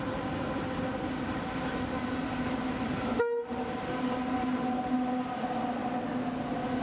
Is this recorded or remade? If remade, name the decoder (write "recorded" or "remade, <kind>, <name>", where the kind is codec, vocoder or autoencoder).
recorded